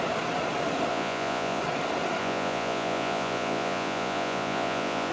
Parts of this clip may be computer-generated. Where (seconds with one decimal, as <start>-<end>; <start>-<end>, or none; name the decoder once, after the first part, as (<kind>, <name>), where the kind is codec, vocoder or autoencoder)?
0.9-1.6 (vocoder, Vocos); 2.2-5.1